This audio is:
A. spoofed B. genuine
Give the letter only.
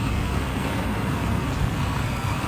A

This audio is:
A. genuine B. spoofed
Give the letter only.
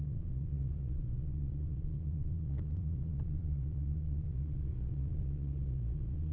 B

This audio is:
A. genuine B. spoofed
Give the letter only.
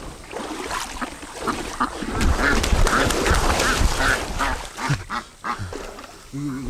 A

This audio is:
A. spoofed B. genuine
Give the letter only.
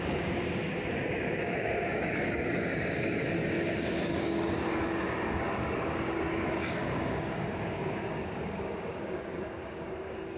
A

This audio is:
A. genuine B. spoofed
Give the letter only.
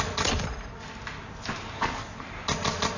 A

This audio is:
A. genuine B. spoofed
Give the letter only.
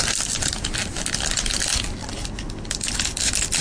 A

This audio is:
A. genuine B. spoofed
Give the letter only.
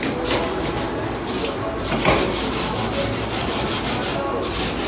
A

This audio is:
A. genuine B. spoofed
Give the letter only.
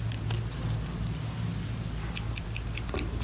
A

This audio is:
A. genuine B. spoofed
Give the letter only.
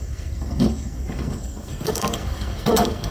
B